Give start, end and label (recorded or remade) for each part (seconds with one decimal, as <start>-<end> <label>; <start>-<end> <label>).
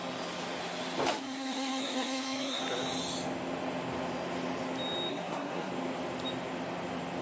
0.0-1.1 recorded; 1.1-2.6 remade; 2.6-5.1 recorded; 5.1-5.7 remade; 5.7-7.2 recorded